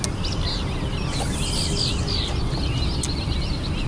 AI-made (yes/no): no